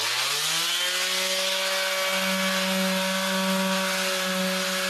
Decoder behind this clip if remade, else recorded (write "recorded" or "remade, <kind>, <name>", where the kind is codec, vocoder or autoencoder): recorded